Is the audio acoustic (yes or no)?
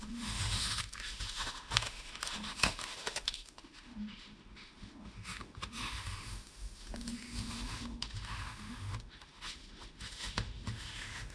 no